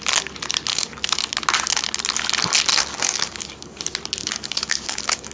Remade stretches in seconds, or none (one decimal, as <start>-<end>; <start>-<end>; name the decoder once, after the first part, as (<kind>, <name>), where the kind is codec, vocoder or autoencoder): 0.7-1.3 (codec, DAC); 2.7-3.8; 4.2-5.3